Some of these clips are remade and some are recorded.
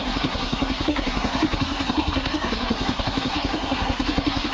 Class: remade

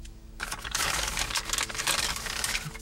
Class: remade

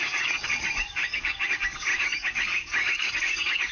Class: remade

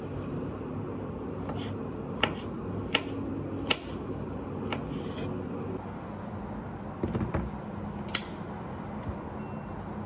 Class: recorded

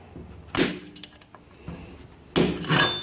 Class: recorded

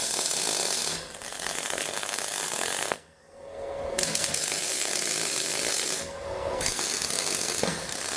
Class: remade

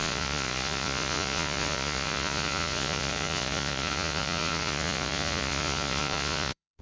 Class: remade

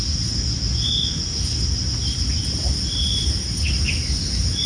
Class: recorded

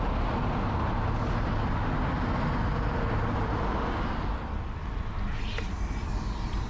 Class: recorded